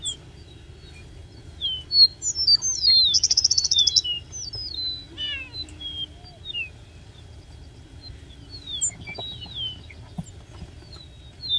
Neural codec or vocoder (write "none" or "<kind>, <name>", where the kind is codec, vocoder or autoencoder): none